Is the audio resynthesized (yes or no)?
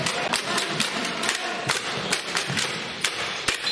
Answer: yes